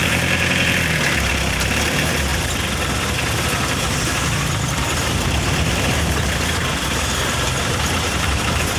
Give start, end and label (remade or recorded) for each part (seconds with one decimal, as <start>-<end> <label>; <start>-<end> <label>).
0.0-2.3 remade; 2.3-3.8 recorded; 3.8-8.8 remade